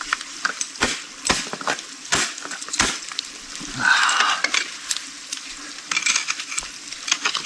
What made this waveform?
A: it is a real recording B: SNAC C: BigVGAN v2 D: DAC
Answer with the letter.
C